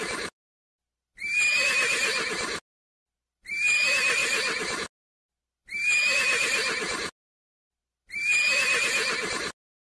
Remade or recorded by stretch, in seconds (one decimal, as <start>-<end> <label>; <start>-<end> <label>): 0.0-9.8 recorded